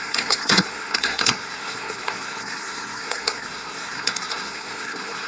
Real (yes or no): no